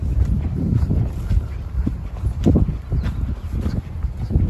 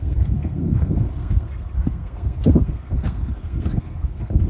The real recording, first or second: first